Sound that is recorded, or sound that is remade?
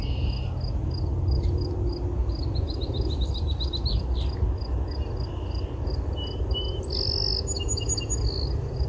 recorded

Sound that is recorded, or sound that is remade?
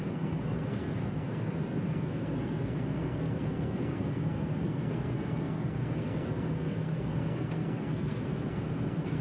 remade